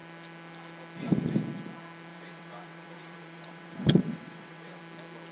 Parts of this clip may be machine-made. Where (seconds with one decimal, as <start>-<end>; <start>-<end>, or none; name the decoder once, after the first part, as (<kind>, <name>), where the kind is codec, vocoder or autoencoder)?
2.1-4.8 (vocoder, WaveNeXt)